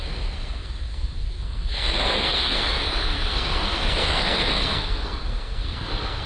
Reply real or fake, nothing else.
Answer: fake